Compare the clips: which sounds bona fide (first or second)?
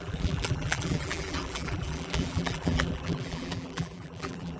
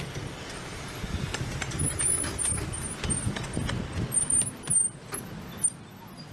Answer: second